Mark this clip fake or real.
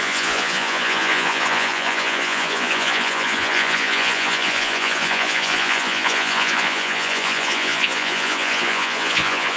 fake